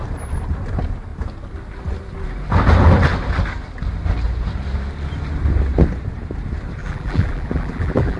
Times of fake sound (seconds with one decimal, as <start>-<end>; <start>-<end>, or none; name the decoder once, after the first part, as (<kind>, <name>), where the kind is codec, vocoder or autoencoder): 6.8-8.2 (vocoder, BigVGAN v2)